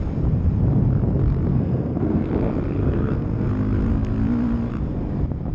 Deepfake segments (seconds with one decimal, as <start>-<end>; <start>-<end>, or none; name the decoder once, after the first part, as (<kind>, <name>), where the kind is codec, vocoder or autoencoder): 1.5-2.3 (codec, SNAC); 2.8-3.5